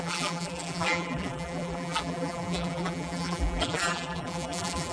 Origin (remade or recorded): remade